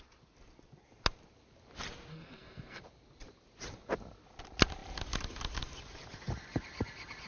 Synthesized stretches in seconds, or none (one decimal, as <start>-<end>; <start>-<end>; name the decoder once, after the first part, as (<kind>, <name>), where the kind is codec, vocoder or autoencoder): 2.1-2.8 (codec, SNAC)